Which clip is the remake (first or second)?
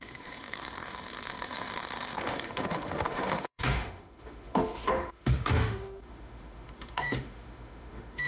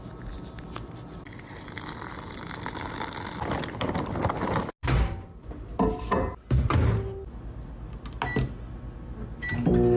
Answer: first